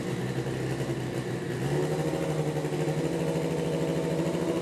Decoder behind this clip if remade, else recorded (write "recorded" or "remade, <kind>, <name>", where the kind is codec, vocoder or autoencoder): recorded